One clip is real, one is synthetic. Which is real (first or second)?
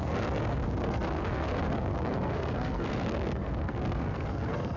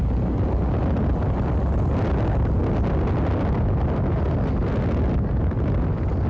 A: second